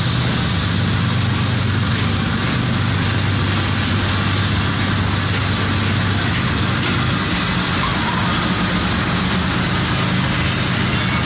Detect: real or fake real